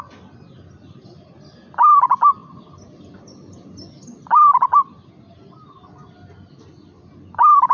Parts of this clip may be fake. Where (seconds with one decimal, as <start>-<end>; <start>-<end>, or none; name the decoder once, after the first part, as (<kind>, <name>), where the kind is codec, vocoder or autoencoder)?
none

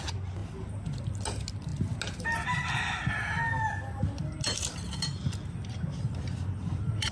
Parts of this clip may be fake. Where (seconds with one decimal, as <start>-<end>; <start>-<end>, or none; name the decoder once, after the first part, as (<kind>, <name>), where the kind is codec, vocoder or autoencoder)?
none

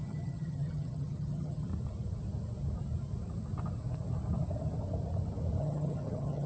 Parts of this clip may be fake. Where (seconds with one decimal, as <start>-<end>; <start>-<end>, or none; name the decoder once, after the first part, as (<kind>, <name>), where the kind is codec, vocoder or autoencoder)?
0.0-1.7 (vocoder, HiFi-GAN); 5.6-6.5

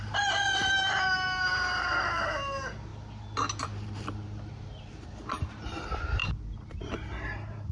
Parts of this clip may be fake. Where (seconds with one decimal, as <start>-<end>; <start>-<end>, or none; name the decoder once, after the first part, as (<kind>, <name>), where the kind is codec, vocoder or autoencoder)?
0.0-2.9 (vocoder, BigVGAN v2); 3.6-7.7

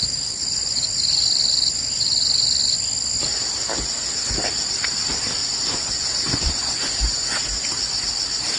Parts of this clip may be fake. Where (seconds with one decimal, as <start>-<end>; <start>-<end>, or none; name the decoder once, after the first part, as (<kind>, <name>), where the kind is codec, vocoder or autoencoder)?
5.4-7.4 (vocoder, Vocos)

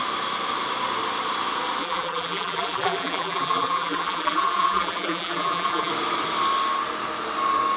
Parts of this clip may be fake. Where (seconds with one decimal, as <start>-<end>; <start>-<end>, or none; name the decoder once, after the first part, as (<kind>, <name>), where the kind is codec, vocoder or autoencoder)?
1.8-5.9 (vocoder, BigVGAN v2)